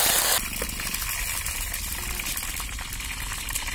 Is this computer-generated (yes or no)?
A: no